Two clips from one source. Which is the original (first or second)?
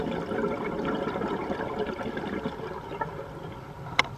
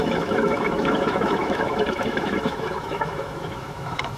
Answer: first